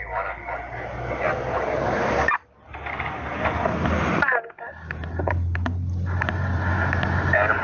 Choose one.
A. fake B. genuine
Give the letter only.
B